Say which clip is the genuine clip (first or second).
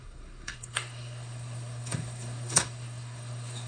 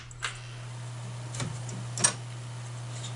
second